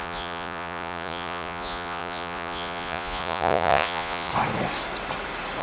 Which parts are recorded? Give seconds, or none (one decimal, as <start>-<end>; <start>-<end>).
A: 4.3-5.6